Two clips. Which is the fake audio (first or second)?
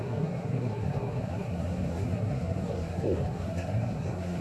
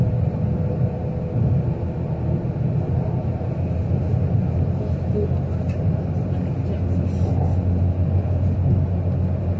first